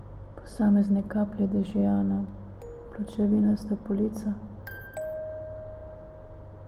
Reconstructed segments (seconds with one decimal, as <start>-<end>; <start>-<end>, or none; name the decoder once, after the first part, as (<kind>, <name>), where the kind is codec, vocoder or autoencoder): none